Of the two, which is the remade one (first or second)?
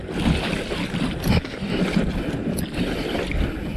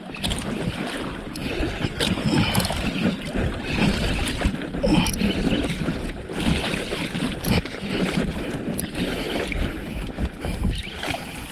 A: second